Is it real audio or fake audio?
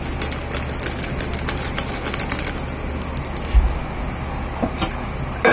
real